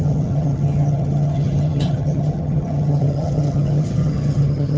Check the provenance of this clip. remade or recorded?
remade